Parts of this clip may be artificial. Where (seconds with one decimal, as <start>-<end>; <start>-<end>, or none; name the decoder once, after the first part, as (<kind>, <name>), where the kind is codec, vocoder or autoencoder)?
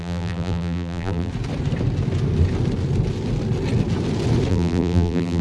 0.0-1.3 (vocoder, BigVGAN v2); 4.5-5.4